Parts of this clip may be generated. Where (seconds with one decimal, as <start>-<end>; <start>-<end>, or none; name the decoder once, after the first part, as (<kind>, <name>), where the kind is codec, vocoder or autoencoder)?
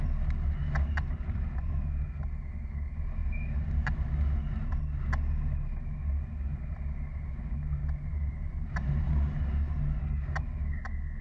8.1-9.1 (vocoder, BigVGAN v2)